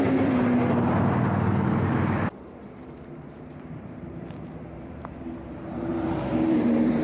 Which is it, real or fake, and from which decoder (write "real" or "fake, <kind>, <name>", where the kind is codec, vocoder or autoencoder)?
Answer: fake, vocoder, BigVGAN v2